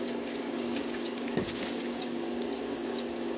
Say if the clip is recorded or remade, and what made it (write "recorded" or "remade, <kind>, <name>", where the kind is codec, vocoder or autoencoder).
remade, codec, DAC